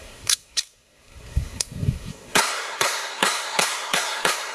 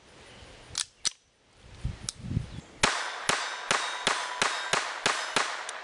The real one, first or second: second